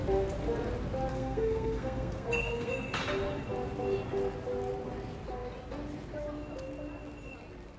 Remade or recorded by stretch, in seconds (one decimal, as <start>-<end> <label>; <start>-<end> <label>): 0.0-1.1 recorded; 1.1-3.0 remade; 3.0-7.8 recorded